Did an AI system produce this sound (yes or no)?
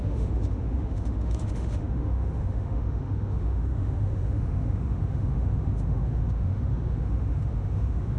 yes